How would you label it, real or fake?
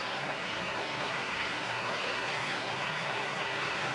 fake